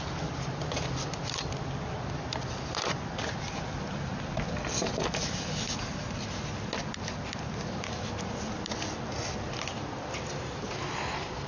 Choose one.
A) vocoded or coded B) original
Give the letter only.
B